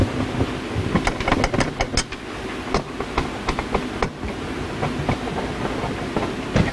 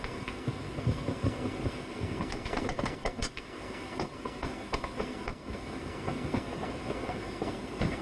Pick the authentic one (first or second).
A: first